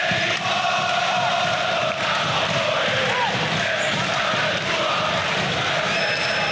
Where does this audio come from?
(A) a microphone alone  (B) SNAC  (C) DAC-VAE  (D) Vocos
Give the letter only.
A